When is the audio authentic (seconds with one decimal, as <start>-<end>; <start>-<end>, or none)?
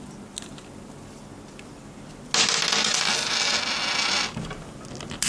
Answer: 0.0-5.3